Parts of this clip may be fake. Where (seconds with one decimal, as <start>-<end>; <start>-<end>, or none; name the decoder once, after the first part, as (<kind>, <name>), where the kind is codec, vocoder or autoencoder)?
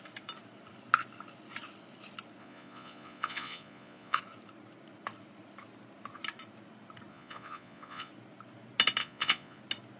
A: 2.4-4.2 (vocoder, Vocos); 7.1-8.1; 9.0-9.6